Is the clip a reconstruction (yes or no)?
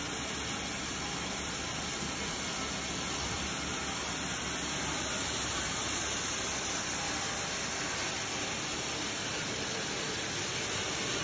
no